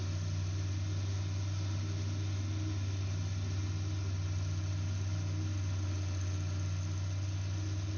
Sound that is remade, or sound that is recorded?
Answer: recorded